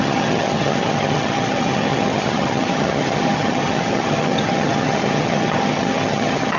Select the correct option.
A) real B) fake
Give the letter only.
B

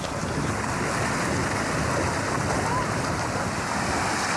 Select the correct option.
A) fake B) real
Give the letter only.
B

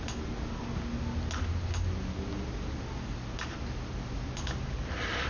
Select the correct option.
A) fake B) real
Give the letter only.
B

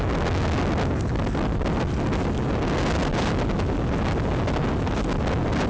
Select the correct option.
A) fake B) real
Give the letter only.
B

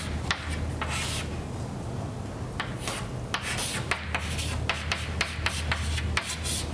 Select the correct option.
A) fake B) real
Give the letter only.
B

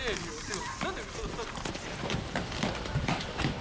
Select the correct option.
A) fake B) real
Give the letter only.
B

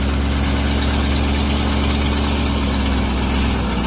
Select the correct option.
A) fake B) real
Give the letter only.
B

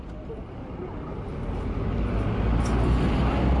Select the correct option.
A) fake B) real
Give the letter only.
B